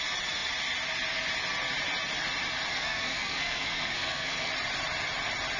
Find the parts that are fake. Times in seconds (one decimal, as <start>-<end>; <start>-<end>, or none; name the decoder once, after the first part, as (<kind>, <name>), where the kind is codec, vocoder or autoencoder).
2.7-4.5 (codec, SNAC)